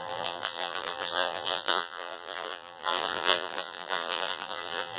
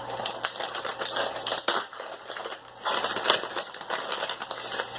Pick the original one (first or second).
second